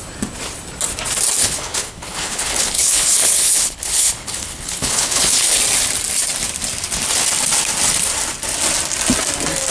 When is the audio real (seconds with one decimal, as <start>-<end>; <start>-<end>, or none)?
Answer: 0.0-1.4; 5.6-9.7